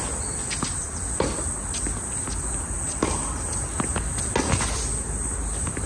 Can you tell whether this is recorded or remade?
recorded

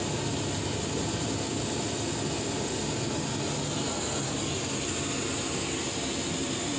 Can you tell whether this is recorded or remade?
recorded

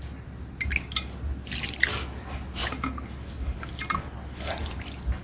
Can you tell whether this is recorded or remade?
recorded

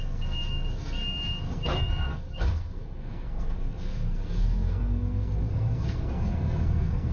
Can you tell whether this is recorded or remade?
remade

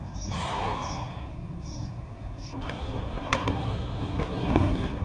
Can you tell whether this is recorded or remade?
remade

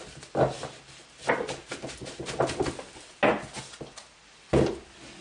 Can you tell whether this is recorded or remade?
recorded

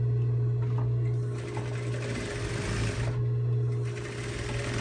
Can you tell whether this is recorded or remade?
recorded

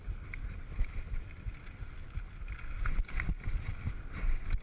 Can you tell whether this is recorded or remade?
recorded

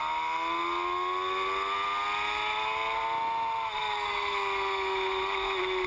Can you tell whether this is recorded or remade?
recorded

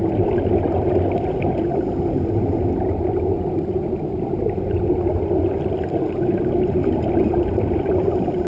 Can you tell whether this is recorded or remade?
recorded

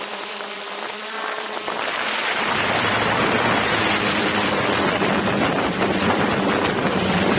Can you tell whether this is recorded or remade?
remade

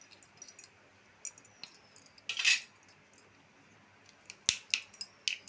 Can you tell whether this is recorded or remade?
recorded